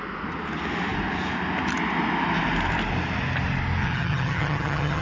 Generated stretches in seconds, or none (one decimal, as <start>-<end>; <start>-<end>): 3.8-5.0